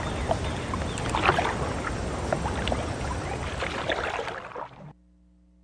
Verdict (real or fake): real